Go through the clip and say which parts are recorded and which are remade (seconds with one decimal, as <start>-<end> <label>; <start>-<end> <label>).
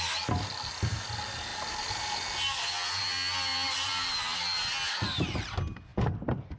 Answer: 0.0-6.6 recorded